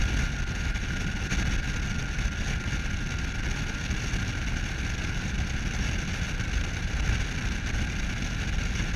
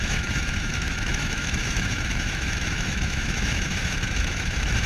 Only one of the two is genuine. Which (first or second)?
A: first